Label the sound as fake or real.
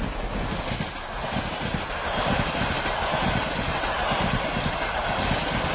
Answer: real